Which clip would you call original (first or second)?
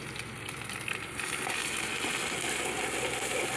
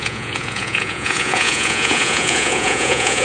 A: first